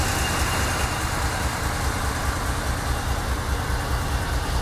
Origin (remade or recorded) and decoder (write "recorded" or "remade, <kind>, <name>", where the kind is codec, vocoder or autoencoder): recorded